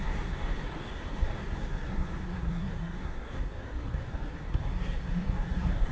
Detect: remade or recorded remade